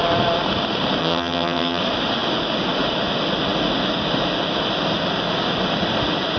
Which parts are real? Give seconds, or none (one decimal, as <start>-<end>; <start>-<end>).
0.0-1.0; 1.8-6.4